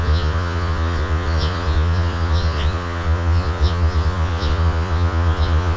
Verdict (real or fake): fake